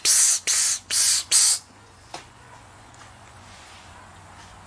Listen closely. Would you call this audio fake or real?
fake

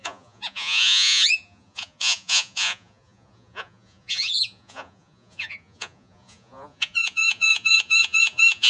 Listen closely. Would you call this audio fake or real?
fake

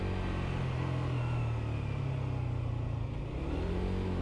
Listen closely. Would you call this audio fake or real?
real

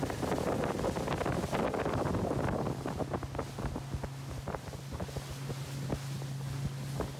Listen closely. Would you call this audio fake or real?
real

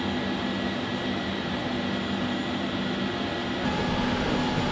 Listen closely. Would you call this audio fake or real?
real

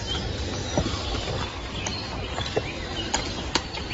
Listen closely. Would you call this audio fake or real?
real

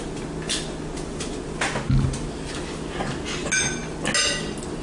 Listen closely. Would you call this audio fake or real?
real